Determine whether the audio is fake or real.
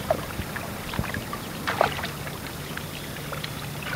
fake